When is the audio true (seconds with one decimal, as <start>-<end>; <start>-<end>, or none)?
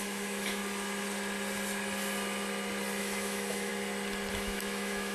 0.6-3.0; 3.7-4.3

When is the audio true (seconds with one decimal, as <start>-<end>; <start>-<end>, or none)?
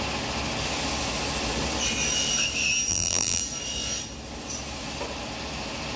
0.0-2.9; 3.4-6.0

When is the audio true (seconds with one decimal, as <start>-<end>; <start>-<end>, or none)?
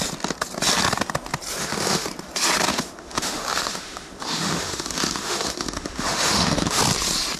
0.0-1.6; 2.1-2.7; 6.8-7.4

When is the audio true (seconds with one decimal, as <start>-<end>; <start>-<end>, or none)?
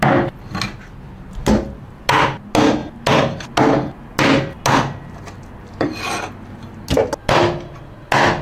0.0-8.4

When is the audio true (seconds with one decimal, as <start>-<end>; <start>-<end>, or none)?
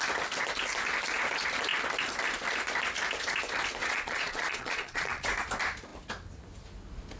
0.0-3.8; 5.3-7.2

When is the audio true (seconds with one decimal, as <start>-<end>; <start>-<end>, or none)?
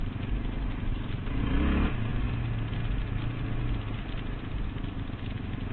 0.0-0.9; 1.4-5.7